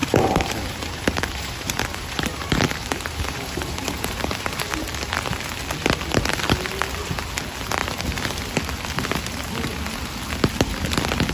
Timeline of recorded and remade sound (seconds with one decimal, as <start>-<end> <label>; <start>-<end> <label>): 0.0-4.6 remade; 4.6-11.3 recorded